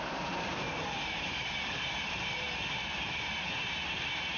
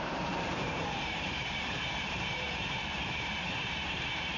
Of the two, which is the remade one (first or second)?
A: second